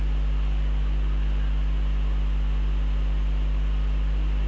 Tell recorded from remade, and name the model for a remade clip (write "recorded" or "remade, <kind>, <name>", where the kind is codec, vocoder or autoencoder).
recorded